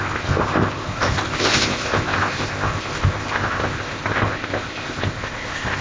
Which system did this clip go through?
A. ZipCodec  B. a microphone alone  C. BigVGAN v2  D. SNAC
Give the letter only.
A